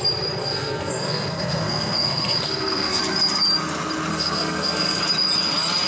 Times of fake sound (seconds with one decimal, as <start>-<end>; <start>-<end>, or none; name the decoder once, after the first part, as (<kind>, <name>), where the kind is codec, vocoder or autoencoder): 0.4-3.0 (codec, SNAC); 4.1-5.0